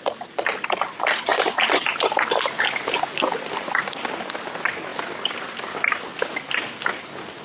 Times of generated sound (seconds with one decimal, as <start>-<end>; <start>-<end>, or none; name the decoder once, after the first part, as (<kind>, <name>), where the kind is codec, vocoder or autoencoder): 0.0-7.4 (vocoder, BigVGAN v2)